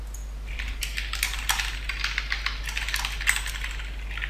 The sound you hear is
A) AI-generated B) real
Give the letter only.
B